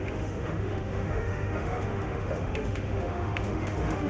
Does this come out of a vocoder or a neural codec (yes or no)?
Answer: yes